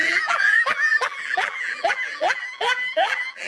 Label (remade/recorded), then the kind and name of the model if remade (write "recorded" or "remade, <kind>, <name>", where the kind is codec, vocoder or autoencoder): remade, vocoder, BigVGAN v2